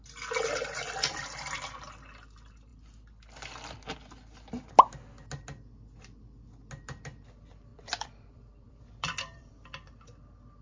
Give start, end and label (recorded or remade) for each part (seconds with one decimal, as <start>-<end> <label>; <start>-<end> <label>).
0.0-7.7 recorded; 7.7-9.5 remade; 9.5-10.6 recorded